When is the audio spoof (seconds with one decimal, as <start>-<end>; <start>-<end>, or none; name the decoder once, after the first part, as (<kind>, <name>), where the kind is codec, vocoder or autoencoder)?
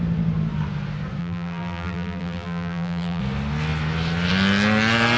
1.2-3.2 (vocoder, BigVGAN v2)